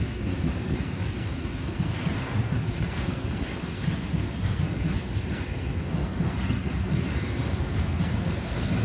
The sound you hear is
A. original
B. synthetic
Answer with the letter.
B